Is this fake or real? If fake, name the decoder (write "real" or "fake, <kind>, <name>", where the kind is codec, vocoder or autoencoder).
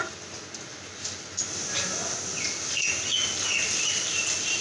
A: real